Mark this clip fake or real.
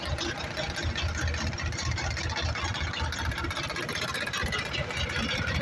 real